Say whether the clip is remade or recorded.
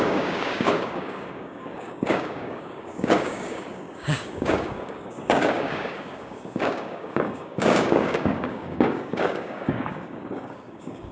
remade